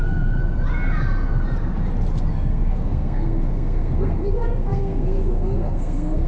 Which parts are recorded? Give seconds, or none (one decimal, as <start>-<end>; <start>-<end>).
0.4-2.3